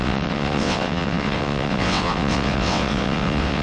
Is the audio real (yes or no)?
no